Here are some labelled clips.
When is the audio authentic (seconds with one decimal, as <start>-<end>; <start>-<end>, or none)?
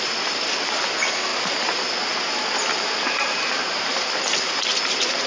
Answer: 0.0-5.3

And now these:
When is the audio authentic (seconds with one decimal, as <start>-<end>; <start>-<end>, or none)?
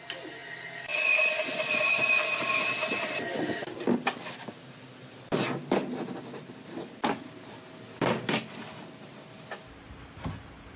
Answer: 0.0-10.8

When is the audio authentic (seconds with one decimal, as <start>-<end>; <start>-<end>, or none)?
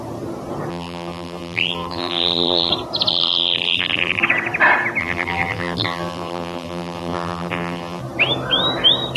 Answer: 0.0-0.7; 2.7-3.1; 4.2-5.0; 8.0-9.2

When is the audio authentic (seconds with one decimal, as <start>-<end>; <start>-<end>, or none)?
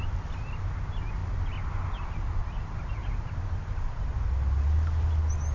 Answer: 0.0-5.5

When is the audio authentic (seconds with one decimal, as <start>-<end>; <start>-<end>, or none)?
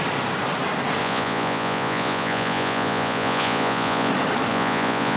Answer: 0.0-1.0; 4.1-4.5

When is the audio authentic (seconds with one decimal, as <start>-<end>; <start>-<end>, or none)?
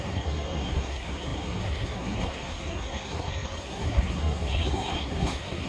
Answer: none